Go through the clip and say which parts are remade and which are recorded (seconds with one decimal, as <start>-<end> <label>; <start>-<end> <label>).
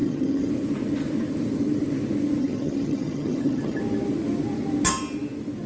0.0-0.5 remade; 0.5-2.4 recorded; 2.4-3.8 remade; 3.8-5.7 recorded